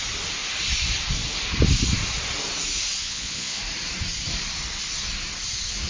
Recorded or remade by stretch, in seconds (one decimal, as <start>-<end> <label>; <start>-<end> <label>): 0.0-3.0 recorded; 3.0-3.6 remade; 3.6-5.9 recorded